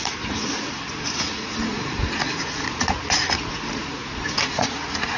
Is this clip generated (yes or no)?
yes